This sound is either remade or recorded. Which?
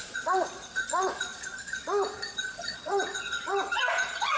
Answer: remade